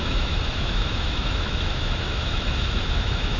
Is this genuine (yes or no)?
no